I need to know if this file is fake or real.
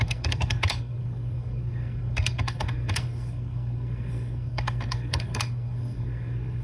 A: fake